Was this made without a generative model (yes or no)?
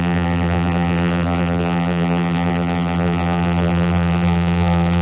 no